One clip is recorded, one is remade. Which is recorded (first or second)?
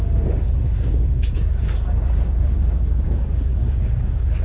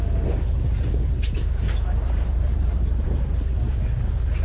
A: second